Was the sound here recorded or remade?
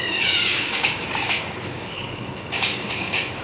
remade